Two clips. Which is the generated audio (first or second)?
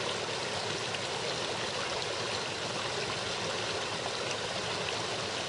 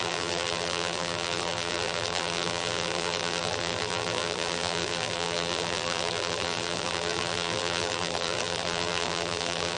second